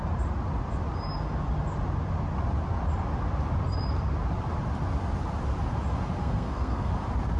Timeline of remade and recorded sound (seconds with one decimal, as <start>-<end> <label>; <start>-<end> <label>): 0.0-6.2 recorded; 6.2-6.9 remade; 6.9-7.4 recorded

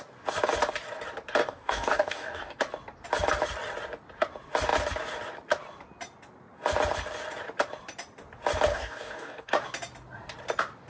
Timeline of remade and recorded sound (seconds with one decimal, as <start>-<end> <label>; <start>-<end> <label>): 0.0-1.4 recorded; 1.4-2.6 remade; 2.6-8.7 recorded; 8.7-9.5 remade; 9.5-10.9 recorded

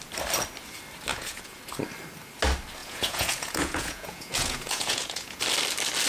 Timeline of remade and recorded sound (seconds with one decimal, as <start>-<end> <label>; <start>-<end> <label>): 0.0-1.1 recorded; 1.1-1.6 remade; 1.6-2.8 recorded; 2.8-5.4 remade; 5.4-6.1 recorded

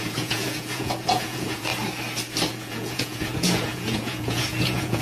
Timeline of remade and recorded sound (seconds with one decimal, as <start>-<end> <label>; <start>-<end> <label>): 0.0-1.7 remade; 1.7-2.6 recorded; 2.6-5.0 remade

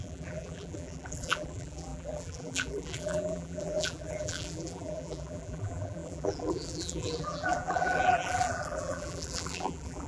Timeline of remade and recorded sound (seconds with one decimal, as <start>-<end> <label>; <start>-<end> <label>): 0.0-10.1 remade

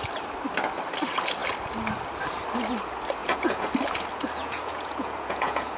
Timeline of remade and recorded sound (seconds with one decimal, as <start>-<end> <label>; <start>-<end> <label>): 0.0-3.2 recorded; 3.2-3.7 remade; 3.7-4.4 recorded; 4.4-5.8 remade

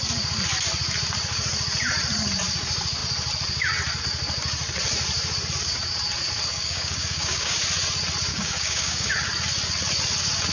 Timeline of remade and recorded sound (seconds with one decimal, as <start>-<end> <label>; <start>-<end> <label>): 0.0-6.5 recorded; 6.5-7.6 remade; 7.6-8.3 recorded; 8.3-9.1 remade; 9.1-10.5 recorded